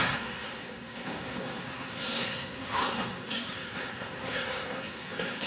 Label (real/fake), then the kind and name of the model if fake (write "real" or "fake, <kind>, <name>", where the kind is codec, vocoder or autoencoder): fake, codec, SNAC